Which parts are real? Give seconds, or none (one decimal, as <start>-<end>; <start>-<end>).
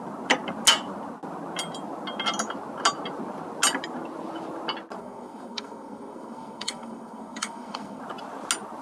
0.0-5.0; 8.0-8.8